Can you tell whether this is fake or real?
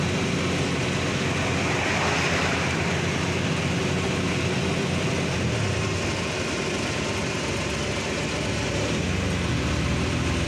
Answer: real